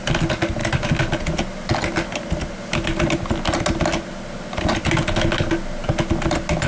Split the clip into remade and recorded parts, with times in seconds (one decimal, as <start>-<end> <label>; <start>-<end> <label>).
0.0-6.7 recorded

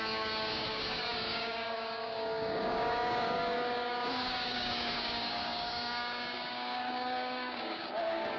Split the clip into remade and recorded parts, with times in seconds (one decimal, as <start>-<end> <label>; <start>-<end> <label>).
0.0-8.4 remade

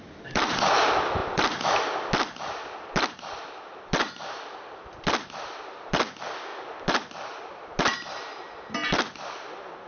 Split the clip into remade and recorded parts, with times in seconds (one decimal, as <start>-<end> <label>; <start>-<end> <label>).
0.0-9.9 recorded